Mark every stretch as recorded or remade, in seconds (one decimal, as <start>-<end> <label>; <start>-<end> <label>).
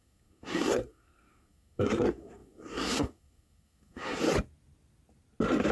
0.0-4.2 remade; 4.2-5.7 recorded